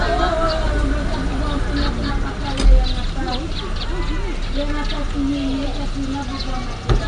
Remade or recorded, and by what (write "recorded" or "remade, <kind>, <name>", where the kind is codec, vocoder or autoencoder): recorded